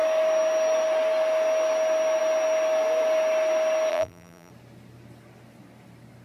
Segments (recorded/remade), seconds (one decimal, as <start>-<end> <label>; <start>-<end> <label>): 0.0-3.9 recorded; 3.9-4.5 remade; 4.5-6.2 recorded